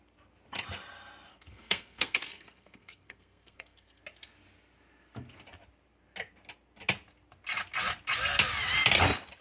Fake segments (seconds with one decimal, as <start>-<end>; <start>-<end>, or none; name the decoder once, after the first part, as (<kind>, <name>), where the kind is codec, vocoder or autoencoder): 1.3-4.0 (codec, SNAC)